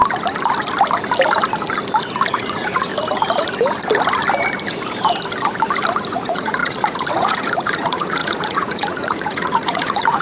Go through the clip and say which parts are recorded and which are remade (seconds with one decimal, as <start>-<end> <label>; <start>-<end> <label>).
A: 0.0-2.3 recorded; 2.3-2.9 remade; 2.9-6.1 recorded; 6.1-10.2 remade